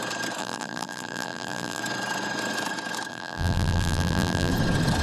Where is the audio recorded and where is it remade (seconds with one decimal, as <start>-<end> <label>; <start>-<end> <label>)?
0.0-0.4 recorded; 0.4-1.8 remade; 1.8-3.1 recorded; 3.1-4.5 remade; 4.5-5.0 recorded